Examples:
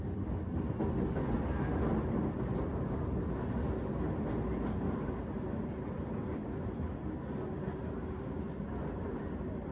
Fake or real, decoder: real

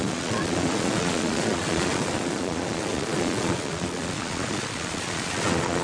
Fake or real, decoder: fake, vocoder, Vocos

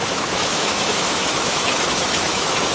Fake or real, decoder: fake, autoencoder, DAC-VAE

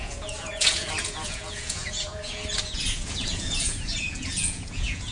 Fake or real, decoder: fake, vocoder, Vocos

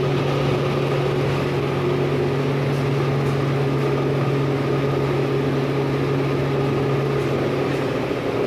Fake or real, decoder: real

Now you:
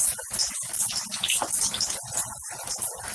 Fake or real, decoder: real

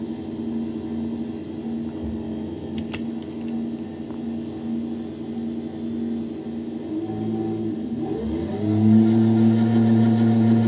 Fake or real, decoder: real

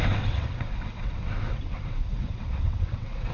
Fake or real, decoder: fake, vocoder, WaveNeXt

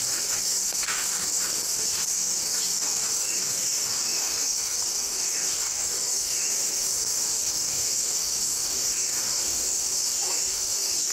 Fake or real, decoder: fake, codec, DAC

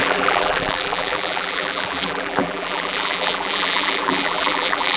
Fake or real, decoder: fake, vocoder, BigVGAN v2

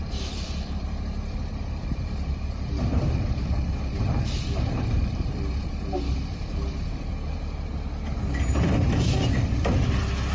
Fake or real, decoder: fake, vocoder, BigVGAN v2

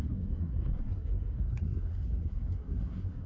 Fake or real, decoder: fake, codec, SNAC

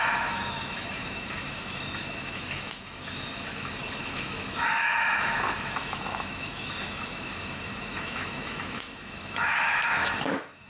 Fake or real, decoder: fake, autoencoder, DAC-VAE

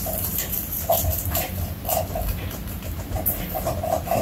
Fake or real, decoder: real